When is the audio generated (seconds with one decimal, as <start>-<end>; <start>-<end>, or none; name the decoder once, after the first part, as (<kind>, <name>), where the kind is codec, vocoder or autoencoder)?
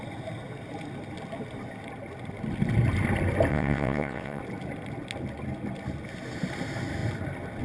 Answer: 3.5-4.4 (vocoder, WaveNeXt)